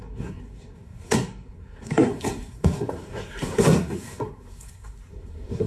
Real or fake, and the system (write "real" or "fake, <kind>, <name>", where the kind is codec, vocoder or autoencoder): fake, codec, SNAC